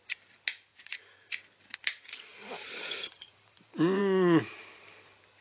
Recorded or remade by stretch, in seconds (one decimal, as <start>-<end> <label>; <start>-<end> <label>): 0.0-0.7 recorded; 0.7-1.4 remade; 1.4-2.4 recorded; 2.4-4.0 remade; 4.0-5.4 recorded